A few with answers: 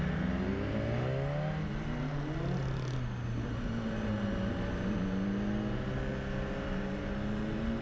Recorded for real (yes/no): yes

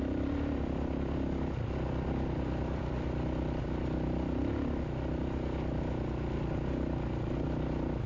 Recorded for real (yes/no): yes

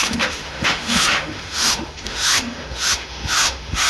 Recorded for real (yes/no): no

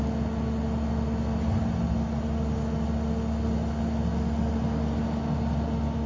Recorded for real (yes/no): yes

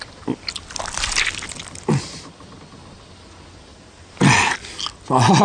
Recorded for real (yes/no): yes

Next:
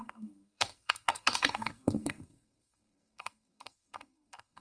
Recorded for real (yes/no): no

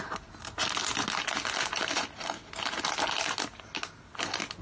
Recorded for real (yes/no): yes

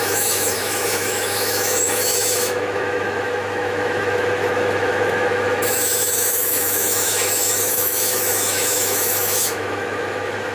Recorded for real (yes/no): no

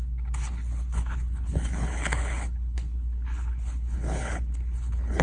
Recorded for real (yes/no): no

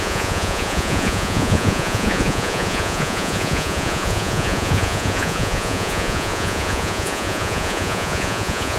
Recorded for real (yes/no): no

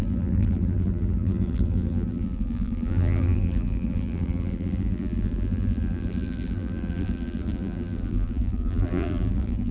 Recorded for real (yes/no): no